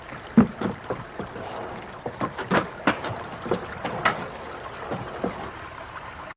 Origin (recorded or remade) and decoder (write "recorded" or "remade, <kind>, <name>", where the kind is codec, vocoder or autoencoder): remade, vocoder, BigVGAN v2